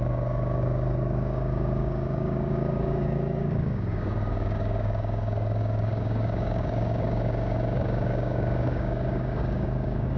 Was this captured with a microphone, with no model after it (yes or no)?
no